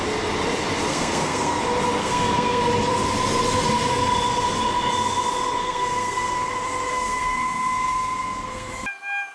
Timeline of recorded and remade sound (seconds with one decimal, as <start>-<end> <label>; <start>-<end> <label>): 0.0-0.9 recorded; 0.9-1.6 remade; 1.6-2.0 recorded; 2.0-2.6 remade; 2.6-5.6 recorded; 5.6-6.5 remade; 6.5-6.9 recorded; 6.9-8.7 remade; 8.7-9.3 recorded